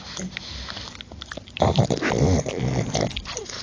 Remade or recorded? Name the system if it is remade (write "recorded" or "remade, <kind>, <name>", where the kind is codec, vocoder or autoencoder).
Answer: recorded